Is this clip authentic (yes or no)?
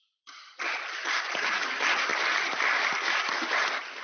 yes